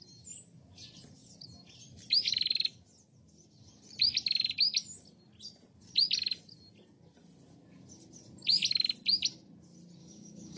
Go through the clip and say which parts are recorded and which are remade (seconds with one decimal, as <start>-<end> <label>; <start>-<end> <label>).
0.0-10.0 recorded; 10.0-10.6 remade